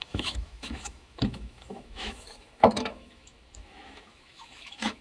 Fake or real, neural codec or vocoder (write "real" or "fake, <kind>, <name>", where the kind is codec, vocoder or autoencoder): fake, autoencoder, DAC-VAE